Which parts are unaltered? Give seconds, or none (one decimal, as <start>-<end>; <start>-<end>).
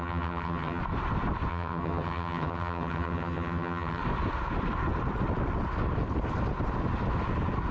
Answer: 0.8-1.5; 4.0-7.7